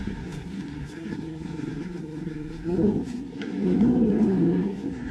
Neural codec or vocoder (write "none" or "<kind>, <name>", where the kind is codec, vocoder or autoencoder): codec, SNAC